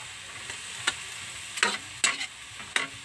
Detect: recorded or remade recorded